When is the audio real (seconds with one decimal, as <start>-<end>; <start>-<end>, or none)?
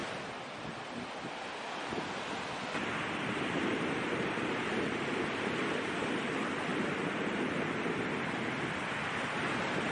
0.6-6.7; 7.7-9.9